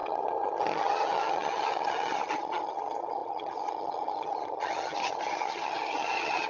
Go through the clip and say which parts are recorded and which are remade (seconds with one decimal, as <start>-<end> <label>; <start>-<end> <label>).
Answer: 0.0-6.5 remade